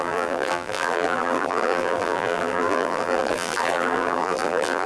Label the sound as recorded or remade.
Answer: remade